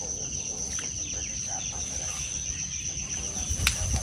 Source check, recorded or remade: recorded